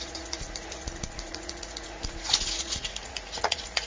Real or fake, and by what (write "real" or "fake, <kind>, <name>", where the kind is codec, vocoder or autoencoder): fake, vocoder, Vocos